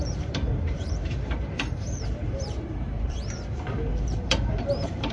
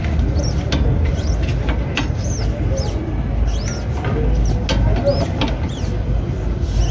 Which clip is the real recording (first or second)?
second